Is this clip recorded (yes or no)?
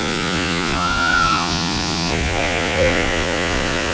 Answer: no